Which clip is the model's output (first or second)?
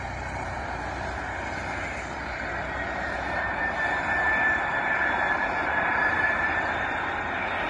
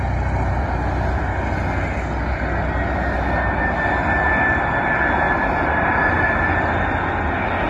first